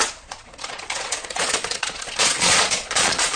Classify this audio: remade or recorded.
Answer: remade